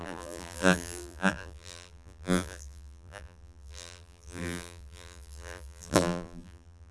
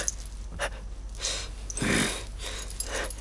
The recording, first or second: second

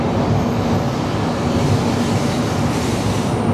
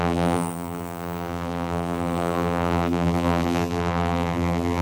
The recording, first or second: first